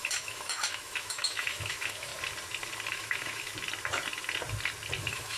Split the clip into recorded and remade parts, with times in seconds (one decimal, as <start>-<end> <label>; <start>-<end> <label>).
0.0-2.1 remade; 2.1-2.9 recorded; 2.9-3.5 remade; 3.5-5.0 recorded; 5.0-5.4 remade